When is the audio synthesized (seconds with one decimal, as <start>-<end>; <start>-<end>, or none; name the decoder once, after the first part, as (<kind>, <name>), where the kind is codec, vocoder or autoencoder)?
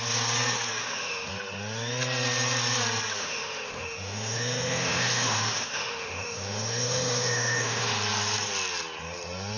0.8-1.3 (autoencoder, DAC-VAE); 3.2-8.0